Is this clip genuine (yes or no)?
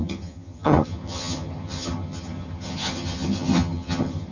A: no